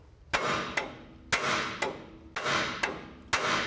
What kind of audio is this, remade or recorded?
recorded